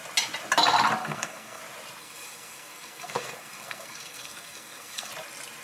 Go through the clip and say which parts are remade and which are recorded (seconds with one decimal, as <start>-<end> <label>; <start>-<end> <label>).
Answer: 0.0-1.0 recorded; 1.0-1.6 remade; 1.6-2.0 recorded; 2.0-5.1 remade; 5.1-5.6 recorded